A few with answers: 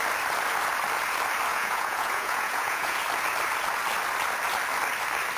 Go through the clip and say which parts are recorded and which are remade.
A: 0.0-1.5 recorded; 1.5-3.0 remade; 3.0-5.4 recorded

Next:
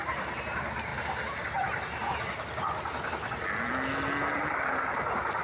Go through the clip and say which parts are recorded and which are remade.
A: 0.0-5.4 recorded

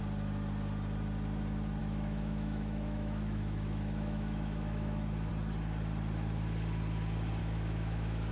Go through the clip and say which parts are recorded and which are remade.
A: 0.0-1.8 recorded; 1.8-5.3 remade; 5.3-7.4 recorded; 7.4-8.3 remade